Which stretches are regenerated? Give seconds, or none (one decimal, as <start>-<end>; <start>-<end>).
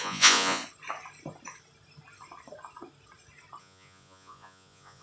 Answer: 0.0-0.6; 3.6-5.0